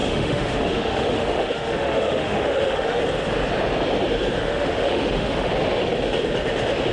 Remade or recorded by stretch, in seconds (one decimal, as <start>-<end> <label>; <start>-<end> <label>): 0.0-3.0 remade; 3.0-4.4 recorded; 4.4-5.5 remade; 5.5-6.9 recorded